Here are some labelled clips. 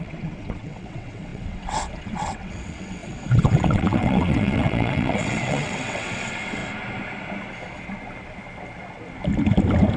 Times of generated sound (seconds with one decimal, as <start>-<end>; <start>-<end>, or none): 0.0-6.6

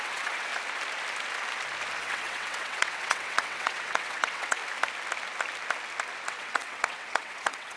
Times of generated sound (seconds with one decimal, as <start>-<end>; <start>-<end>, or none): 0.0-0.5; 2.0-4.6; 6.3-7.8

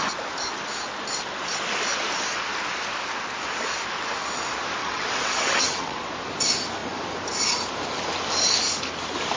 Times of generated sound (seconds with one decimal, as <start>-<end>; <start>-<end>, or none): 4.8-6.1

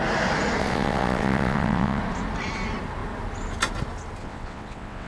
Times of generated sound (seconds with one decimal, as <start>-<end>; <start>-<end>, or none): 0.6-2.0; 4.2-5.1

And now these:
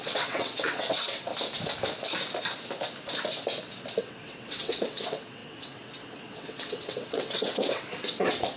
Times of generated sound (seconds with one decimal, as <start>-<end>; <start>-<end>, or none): 0.0-1.3; 4.0-8.6

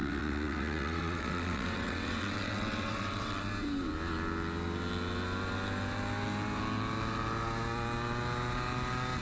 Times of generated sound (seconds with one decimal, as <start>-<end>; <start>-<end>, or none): 0.0-3.5

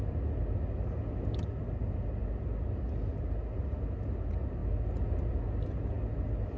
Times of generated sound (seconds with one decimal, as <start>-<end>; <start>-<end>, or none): none